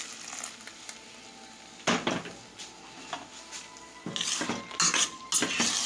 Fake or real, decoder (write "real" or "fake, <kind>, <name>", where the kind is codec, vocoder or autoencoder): real